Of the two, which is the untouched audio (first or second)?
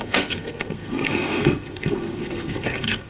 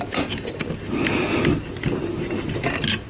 second